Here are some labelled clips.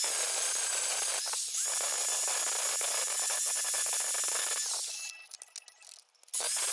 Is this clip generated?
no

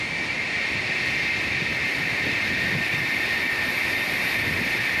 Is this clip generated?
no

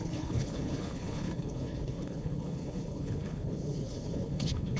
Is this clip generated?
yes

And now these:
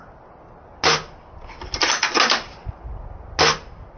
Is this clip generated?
no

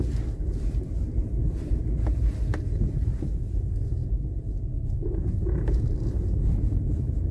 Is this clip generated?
yes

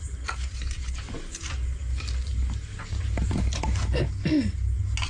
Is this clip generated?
no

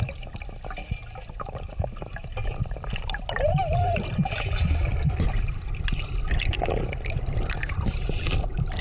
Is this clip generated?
no